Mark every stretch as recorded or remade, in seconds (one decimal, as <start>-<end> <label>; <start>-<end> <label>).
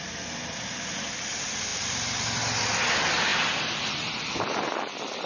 0.0-5.3 recorded